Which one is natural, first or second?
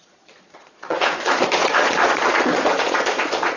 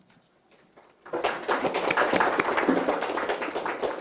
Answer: second